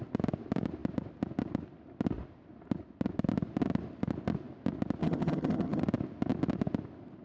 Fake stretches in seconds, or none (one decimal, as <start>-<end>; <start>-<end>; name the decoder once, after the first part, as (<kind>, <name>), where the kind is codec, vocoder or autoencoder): 5.0-5.8 (vocoder, HiFi-GAN)